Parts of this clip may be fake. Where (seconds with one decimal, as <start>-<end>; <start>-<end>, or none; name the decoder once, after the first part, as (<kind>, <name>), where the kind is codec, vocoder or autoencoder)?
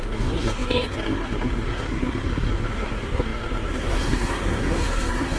0.0-5.4 (codec, SNAC)